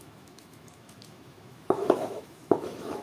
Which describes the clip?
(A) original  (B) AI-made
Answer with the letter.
B